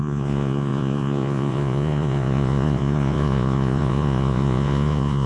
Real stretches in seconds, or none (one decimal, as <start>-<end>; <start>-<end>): none